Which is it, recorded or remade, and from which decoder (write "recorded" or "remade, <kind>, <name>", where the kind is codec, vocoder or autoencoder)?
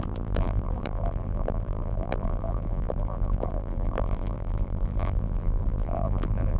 remade, vocoder, BigVGAN v2